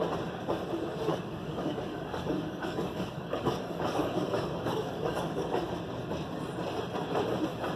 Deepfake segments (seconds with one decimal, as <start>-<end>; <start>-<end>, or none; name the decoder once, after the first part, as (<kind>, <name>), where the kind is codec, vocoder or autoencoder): 1.1-5.6 (codec, DAC)